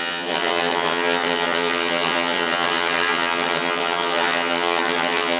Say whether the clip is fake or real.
fake